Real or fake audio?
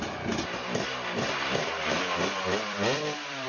fake